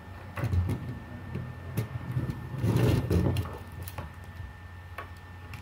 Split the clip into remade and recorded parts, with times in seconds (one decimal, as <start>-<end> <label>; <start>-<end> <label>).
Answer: 0.0-0.8 recorded; 0.8-4.2 remade; 4.2-5.6 recorded